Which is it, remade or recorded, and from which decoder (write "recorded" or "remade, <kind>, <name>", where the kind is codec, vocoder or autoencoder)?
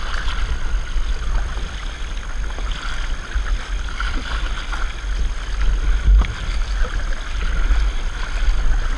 recorded